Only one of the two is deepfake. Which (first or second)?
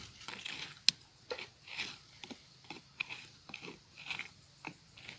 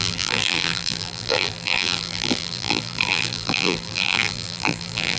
second